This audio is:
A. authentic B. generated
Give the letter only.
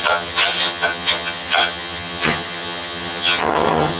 B